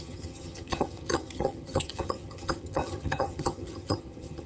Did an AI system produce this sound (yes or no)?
yes